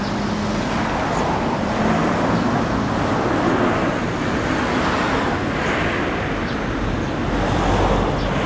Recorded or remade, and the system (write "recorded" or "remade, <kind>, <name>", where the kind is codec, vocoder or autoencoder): recorded